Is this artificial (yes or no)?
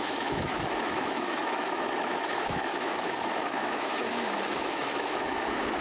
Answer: yes